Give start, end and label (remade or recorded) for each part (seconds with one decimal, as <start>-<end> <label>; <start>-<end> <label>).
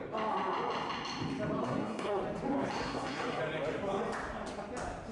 0.0-1.6 recorded; 1.6-2.2 remade; 2.2-2.8 recorded; 2.8-3.4 remade; 3.4-5.1 recorded